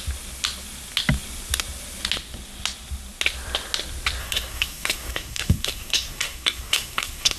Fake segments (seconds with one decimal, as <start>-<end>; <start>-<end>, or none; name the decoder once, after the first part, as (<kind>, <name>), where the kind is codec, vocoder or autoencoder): 4.2-7.4 (codec, SNAC)

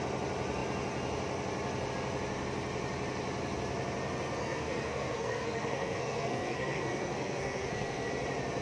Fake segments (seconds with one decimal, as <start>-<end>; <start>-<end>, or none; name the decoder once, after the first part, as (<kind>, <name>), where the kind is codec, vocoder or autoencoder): 4.4-8.1 (codec, SNAC)

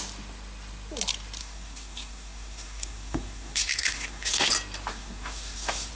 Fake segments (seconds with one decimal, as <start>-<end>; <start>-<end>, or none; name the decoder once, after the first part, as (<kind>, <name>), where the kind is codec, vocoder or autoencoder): 1.4-4.5 (codec, SNAC); 4.9-5.9

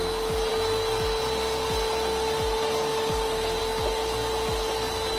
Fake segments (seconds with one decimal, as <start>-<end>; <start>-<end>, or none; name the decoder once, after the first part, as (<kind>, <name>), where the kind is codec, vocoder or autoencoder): none

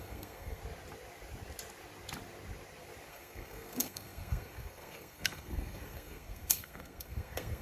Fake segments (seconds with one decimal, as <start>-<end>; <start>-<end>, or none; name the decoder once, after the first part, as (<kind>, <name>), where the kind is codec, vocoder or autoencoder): 0.0-0.6 (codec, SNAC); 3.1-7.6

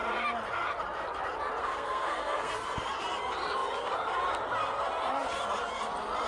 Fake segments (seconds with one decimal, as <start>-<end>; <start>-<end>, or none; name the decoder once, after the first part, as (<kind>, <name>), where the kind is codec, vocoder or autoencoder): 1.6-2.5 (codec, SNAC)

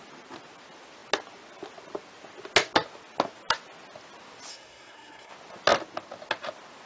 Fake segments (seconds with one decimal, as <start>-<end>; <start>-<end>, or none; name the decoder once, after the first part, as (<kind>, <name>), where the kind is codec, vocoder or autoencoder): 4.5-5.3 (codec, SNAC)